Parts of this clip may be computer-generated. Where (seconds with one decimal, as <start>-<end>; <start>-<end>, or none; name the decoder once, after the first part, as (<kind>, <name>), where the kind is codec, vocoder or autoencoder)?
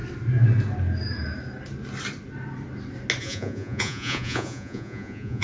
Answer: 3.2-5.4 (vocoder, Vocos)